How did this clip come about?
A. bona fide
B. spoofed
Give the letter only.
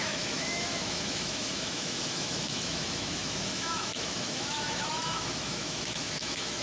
B